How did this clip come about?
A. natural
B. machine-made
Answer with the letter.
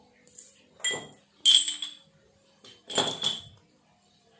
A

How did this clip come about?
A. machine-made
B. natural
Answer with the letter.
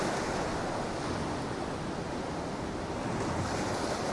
B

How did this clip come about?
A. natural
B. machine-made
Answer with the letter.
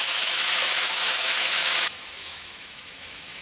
B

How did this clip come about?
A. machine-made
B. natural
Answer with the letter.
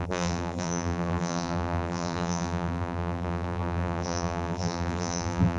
A